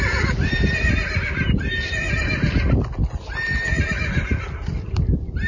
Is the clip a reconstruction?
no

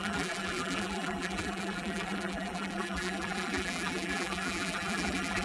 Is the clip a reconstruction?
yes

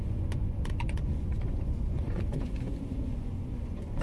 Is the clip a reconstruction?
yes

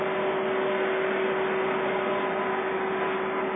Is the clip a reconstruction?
no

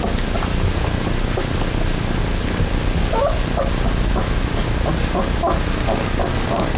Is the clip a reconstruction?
no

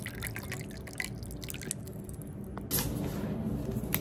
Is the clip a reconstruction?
no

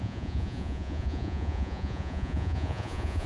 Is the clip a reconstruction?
yes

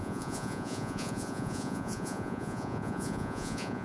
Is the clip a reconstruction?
yes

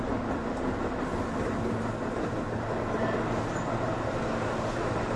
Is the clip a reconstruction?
no